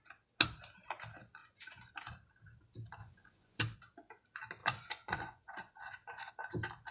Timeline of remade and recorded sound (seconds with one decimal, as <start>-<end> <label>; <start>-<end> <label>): 0.0-1.4 recorded; 1.4-1.9 remade; 1.9-3.0 recorded; 3.0-3.6 remade; 3.6-4.6 recorded; 4.6-6.3 remade; 6.3-6.9 recorded